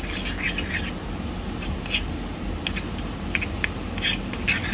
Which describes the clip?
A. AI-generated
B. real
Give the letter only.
B